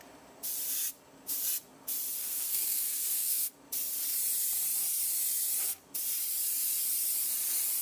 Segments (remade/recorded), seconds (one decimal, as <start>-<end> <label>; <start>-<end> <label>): 0.0-2.2 recorded; 2.2-3.5 remade; 3.5-7.8 recorded